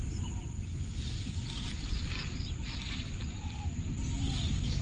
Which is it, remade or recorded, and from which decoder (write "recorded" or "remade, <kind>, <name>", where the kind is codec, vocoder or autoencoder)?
recorded